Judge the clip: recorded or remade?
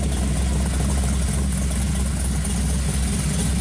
recorded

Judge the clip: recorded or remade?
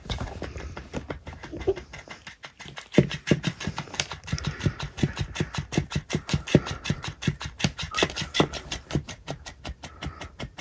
remade